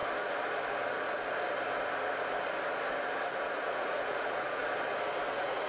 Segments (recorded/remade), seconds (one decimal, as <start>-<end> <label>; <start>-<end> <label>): 0.0-3.4 recorded; 3.4-4.6 remade; 4.6-5.3 recorded; 5.3-5.7 remade